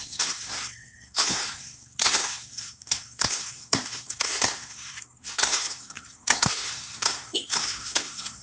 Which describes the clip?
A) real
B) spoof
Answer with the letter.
B